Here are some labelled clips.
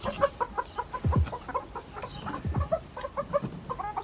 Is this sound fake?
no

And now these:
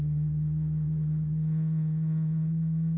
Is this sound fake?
no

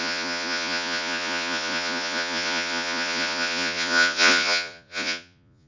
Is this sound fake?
yes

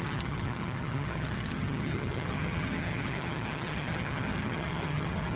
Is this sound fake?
yes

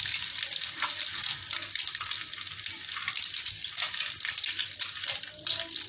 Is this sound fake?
no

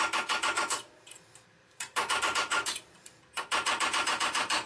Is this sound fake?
yes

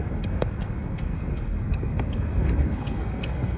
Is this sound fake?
yes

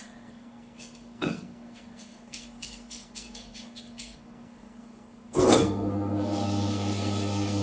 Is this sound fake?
yes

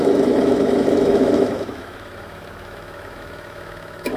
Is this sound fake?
yes